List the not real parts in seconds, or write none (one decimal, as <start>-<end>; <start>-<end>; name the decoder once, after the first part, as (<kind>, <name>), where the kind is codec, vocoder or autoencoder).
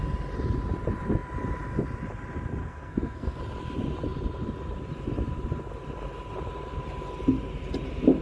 2.6-3.4 (codec, SNAC)